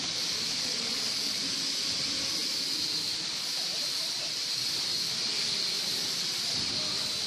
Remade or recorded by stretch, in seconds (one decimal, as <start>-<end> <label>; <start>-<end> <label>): 0.0-7.3 recorded